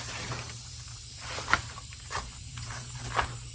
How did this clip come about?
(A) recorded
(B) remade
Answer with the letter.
B